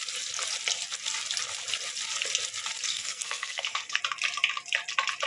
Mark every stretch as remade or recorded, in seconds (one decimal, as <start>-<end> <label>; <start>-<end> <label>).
0.0-2.9 recorded; 2.9-4.0 remade; 4.0-5.3 recorded